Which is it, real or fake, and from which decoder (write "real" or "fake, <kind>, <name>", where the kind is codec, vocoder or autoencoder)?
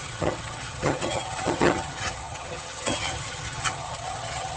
fake, vocoder, HiFi-GAN